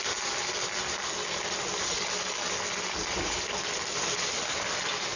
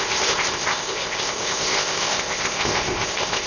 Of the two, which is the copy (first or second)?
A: second